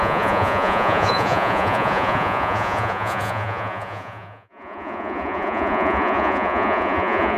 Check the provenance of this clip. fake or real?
fake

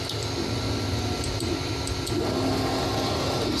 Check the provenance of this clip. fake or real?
real